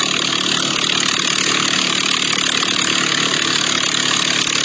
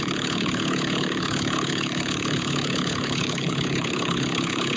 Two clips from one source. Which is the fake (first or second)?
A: second